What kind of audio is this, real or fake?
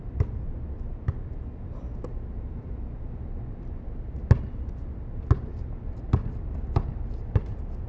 real